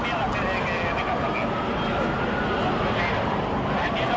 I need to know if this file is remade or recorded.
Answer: recorded